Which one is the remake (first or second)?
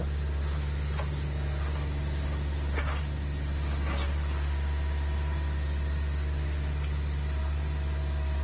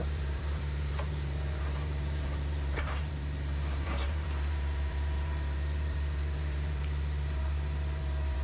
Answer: second